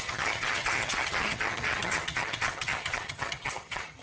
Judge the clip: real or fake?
fake